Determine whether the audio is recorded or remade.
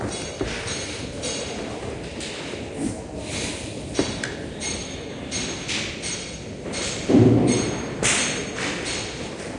recorded